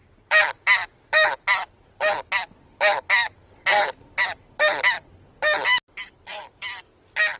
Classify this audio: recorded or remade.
recorded